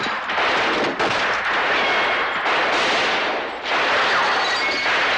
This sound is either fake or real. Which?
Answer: real